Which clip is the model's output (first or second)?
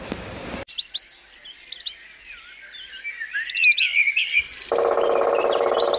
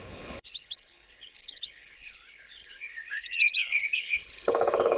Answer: second